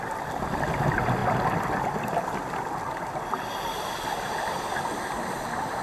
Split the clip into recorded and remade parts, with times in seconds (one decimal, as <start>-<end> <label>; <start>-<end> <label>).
0.0-5.8 recorded